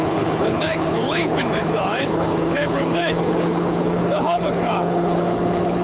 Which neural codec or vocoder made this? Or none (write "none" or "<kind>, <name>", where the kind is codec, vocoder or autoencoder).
codec, HILCodec